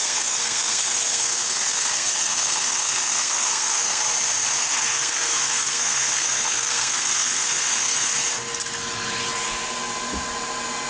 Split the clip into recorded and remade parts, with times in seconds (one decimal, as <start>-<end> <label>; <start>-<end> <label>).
0.0-4.0 remade; 4.0-4.6 recorded; 4.6-8.1 remade; 8.1-10.9 recorded

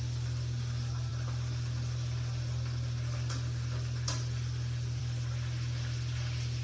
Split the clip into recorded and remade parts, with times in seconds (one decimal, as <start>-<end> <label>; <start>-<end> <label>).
0.0-6.6 recorded